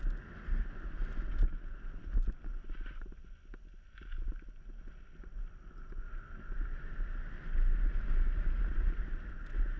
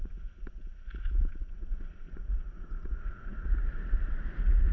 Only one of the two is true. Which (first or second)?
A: first